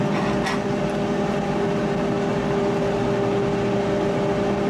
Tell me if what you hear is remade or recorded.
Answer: recorded